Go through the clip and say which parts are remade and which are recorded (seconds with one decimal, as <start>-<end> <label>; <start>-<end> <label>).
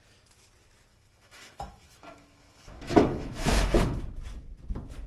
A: 0.0-0.9 recorded; 0.9-4.0 remade; 4.0-5.1 recorded